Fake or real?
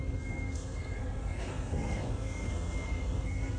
fake